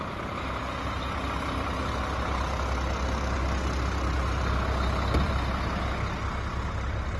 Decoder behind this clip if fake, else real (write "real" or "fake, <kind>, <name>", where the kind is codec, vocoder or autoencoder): real